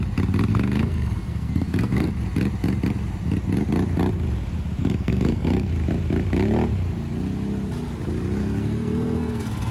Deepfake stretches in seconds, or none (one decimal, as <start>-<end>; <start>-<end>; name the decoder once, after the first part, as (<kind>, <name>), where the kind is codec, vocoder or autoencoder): 0.5-2.1 (codec, SNAC); 4.8-5.7; 8.4-9.7